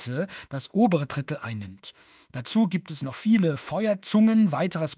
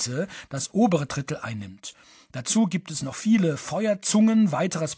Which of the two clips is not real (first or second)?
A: first